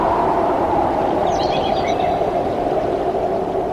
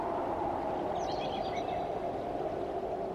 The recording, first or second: second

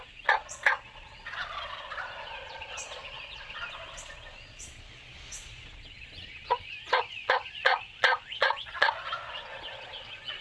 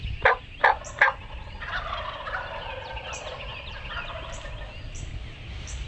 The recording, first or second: second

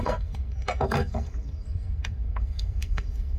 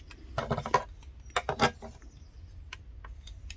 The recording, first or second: second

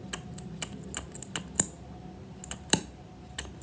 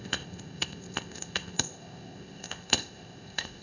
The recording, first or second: first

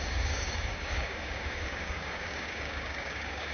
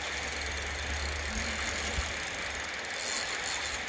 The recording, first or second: second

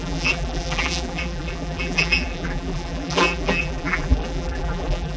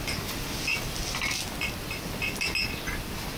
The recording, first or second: second